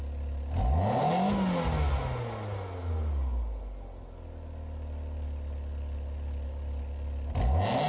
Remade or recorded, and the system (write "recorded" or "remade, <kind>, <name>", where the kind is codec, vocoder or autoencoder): recorded